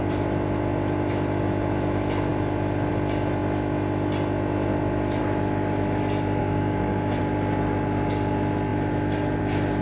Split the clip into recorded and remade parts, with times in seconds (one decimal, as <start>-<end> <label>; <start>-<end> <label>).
0.0-6.4 recorded; 6.4-7.2 remade; 7.2-9.8 recorded